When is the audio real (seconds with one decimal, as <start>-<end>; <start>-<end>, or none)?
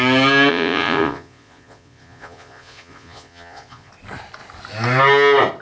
0.0-0.5; 3.9-5.6